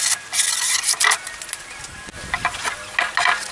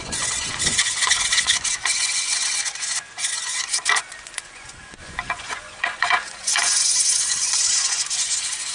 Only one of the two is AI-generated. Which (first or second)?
second